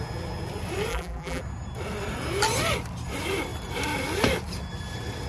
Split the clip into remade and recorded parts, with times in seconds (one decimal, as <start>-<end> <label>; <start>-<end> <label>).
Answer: 0.0-0.9 recorded; 0.9-1.4 remade; 1.4-5.3 recorded